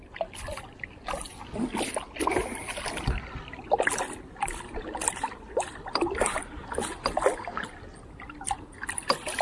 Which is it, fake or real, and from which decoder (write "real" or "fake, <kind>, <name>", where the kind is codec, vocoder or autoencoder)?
real